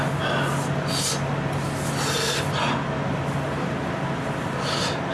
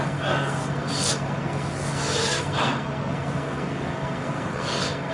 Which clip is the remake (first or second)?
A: second